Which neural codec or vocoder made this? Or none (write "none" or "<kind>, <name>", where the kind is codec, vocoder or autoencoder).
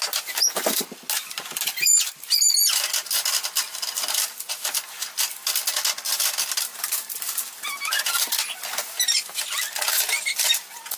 none